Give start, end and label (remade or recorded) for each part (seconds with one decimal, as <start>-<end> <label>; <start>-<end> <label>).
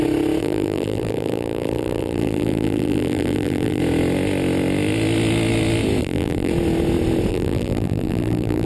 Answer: 0.0-0.4 recorded; 0.4-3.8 remade; 3.8-6.0 recorded; 6.0-6.5 remade; 6.5-7.3 recorded; 7.3-8.7 remade